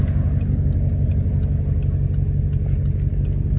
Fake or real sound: real